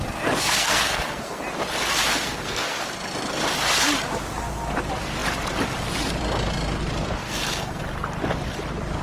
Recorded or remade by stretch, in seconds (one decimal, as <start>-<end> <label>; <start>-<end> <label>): 0.0-0.4 recorded; 0.4-1.4 remade; 1.4-2.1 recorded; 2.1-2.8 remade; 2.8-7.2 recorded; 7.2-7.8 remade; 7.8-9.0 recorded